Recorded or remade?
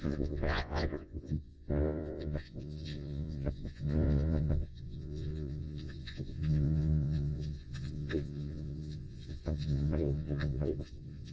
remade